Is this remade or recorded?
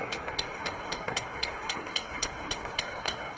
remade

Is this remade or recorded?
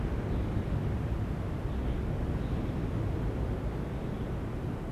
recorded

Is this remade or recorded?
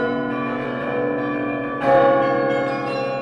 remade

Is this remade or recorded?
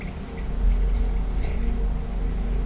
recorded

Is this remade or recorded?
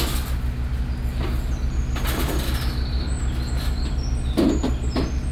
recorded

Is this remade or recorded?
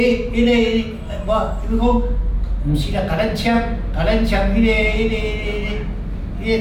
recorded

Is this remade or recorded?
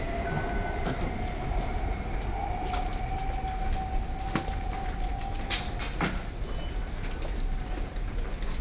recorded